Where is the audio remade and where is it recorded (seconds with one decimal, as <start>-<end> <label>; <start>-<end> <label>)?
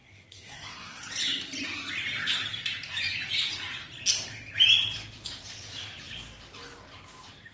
0.0-1.0 remade; 1.0-7.5 recorded